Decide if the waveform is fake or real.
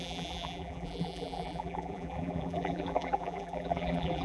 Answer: fake